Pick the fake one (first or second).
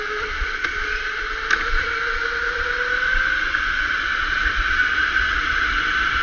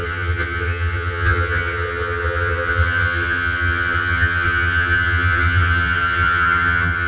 second